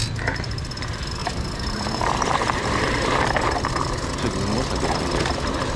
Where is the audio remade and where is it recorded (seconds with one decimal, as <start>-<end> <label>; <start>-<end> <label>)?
0.0-1.2 recorded; 1.2-4.1 remade; 4.1-5.8 recorded